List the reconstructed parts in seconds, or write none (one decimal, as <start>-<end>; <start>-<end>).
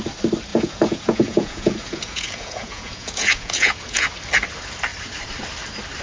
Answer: 0.5-4.1